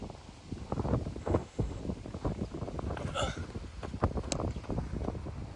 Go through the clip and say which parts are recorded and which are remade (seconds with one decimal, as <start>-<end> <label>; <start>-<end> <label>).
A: 0.0-1.2 recorded; 1.2-1.8 remade; 1.8-5.6 recorded